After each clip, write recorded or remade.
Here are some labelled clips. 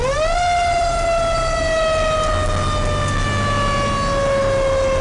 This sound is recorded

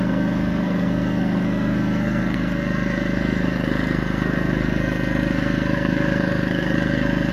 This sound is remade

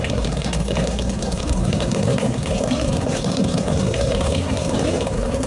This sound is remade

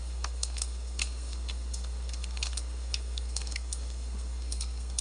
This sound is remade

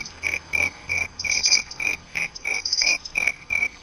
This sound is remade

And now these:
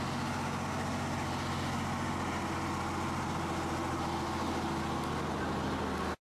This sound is recorded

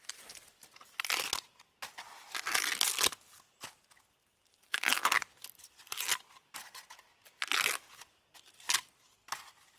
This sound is recorded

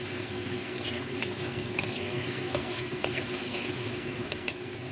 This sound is remade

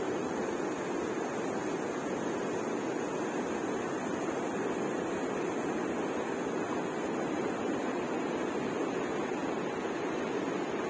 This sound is recorded